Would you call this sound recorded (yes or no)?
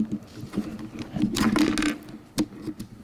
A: yes